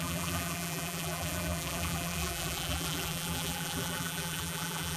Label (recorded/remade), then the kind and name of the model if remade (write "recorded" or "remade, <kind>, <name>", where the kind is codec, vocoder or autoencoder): remade, vocoder, BigVGAN v2